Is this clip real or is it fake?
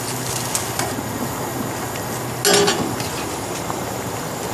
real